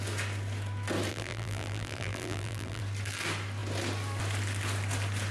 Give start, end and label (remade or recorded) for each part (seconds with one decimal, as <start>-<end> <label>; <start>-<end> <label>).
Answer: 0.0-1.1 recorded; 1.1-2.8 remade; 2.8-5.3 recorded